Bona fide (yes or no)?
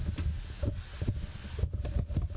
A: yes